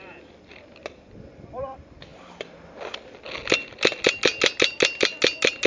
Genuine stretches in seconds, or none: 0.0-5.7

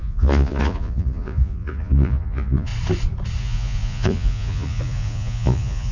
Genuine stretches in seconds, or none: 2.7-3.4

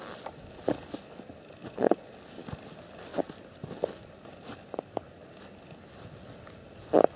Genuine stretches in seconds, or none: 0.0-1.6; 2.1-7.2

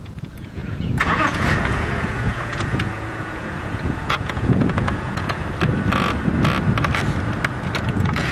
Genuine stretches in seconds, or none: 5.4-7.8

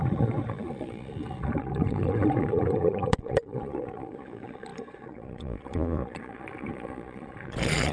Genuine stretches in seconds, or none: none

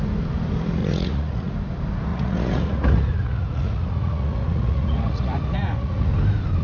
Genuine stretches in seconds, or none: 0.0-0.8; 1.5-2.1; 6.1-6.6

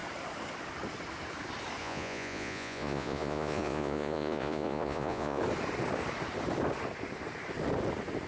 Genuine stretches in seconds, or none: 0.0-1.8; 5.4-8.3